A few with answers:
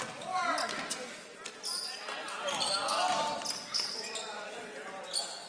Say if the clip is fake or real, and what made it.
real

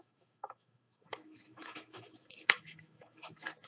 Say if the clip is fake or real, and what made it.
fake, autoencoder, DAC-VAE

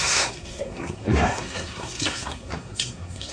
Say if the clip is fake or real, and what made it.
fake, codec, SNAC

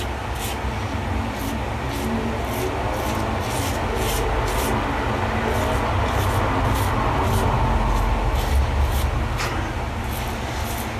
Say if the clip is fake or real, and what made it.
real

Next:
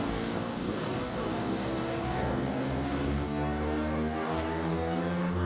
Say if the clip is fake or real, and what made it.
fake, codec, DAC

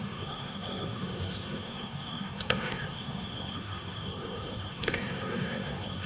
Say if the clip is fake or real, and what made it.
fake, codec, SNAC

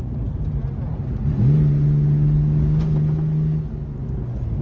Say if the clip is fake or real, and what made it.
real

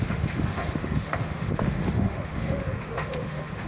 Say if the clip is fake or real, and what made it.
fake, autoencoder, DAC-VAE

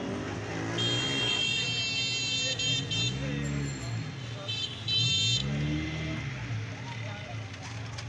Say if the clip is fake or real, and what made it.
real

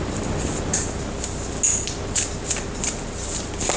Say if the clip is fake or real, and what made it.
real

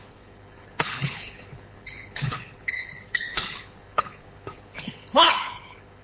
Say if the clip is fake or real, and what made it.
fake, codec, HILCodec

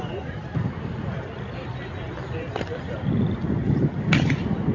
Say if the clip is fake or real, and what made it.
real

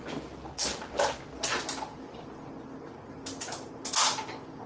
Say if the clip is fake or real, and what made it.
real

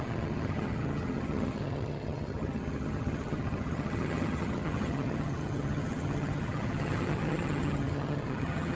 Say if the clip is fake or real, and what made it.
fake, vocoder, HiFi-GAN